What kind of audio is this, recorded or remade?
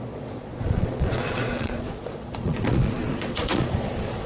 remade